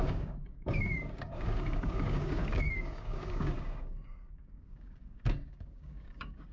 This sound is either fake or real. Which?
fake